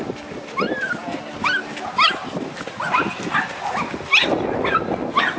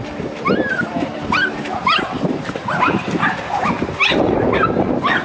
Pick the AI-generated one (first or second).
second